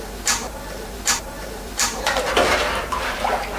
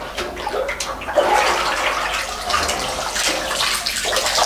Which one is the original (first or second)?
second